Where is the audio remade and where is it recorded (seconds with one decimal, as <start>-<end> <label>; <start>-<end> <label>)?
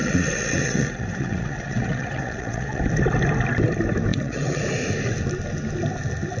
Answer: 0.0-2.8 remade; 2.8-4.1 recorded; 4.1-4.6 remade; 4.6-6.4 recorded